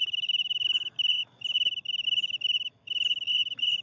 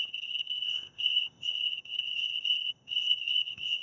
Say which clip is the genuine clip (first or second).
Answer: first